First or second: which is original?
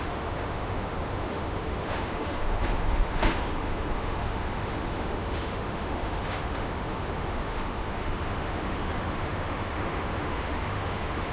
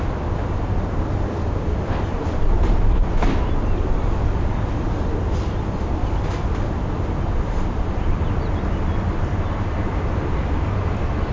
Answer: second